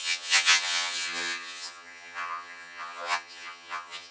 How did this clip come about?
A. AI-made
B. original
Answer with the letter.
A